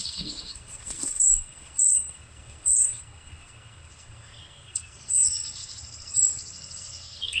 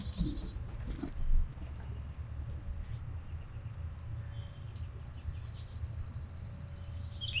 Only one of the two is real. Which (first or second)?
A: second